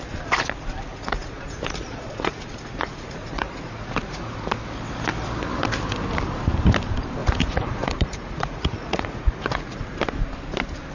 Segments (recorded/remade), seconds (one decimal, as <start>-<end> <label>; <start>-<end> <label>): 0.0-0.9 recorded; 0.9-4.5 remade; 4.5-7.2 recorded; 7.2-9.8 remade; 9.8-10.9 recorded